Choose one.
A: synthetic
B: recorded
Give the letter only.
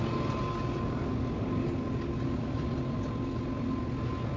B